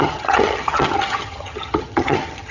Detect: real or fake fake